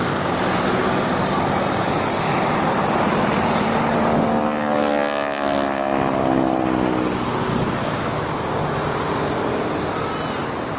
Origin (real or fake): real